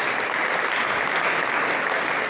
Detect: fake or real real